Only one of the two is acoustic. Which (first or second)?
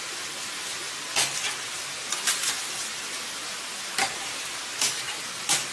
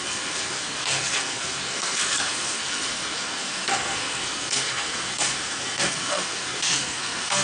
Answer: first